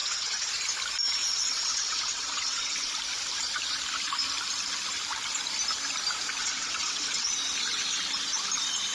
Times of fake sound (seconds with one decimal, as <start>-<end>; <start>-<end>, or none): 0.0-0.5; 1.2-2.9; 6.4-7.3